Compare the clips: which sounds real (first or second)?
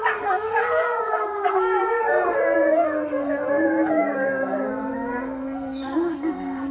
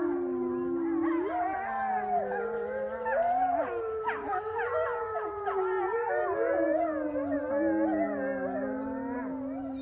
second